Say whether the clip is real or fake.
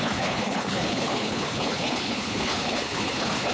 fake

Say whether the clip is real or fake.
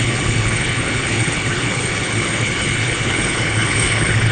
fake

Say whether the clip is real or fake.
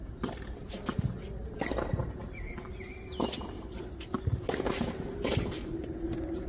real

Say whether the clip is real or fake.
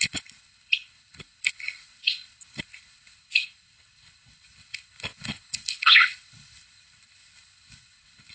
fake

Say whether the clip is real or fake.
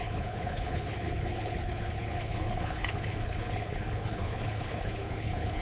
fake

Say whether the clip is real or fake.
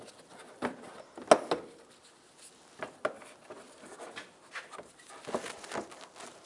real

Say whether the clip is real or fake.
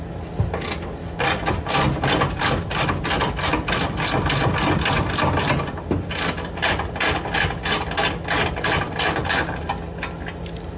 real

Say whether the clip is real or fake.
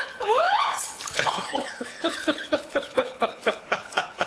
fake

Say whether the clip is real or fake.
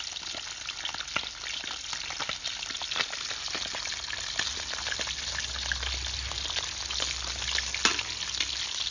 real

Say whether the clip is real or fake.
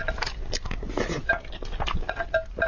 real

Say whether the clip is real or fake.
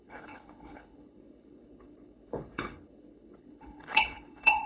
fake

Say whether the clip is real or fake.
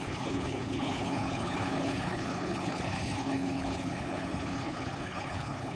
fake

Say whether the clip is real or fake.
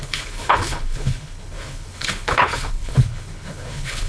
fake